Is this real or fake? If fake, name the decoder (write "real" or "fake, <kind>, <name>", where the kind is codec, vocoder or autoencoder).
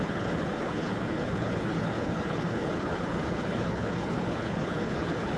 fake, codec, HILCodec